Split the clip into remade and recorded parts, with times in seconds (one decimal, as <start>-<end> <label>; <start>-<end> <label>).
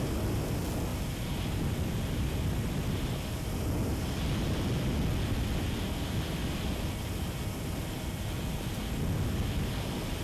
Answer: 0.0-10.2 recorded